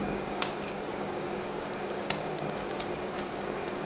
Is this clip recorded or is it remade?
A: remade